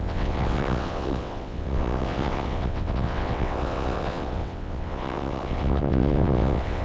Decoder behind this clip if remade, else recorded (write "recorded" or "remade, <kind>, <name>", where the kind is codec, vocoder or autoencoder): remade, vocoder, WaveNeXt